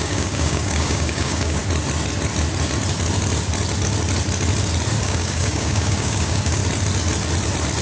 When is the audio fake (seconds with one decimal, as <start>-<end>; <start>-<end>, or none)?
0.0-1.6; 5.0-6.6